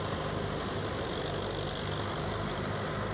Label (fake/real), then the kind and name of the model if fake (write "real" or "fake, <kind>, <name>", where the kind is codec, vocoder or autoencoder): real